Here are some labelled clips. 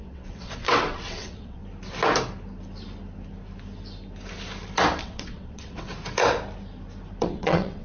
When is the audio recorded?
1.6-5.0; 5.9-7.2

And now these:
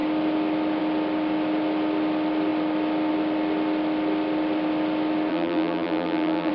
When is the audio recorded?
0.0-5.3

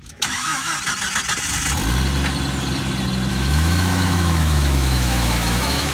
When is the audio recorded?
0.7-3.3

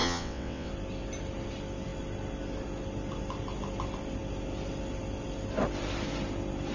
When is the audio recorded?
0.7-6.7

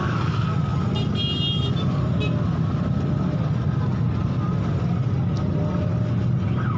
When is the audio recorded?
0.0-6.8